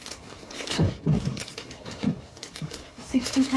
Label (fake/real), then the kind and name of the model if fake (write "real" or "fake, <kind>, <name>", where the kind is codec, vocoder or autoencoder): fake, codec, SNAC